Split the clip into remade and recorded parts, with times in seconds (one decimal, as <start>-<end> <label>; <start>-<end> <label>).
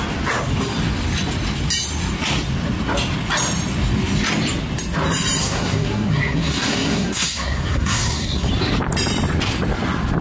0.0-5.4 recorded; 5.4-8.5 remade; 8.5-10.2 recorded